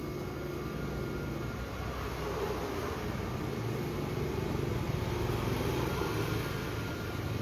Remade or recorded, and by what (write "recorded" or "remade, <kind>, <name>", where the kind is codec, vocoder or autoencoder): recorded